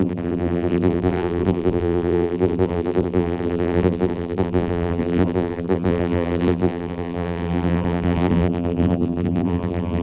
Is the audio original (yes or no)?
no